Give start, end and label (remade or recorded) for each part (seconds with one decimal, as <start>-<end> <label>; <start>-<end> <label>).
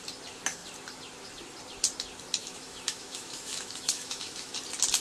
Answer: 0.0-2.4 recorded; 2.4-4.5 remade; 4.5-5.0 recorded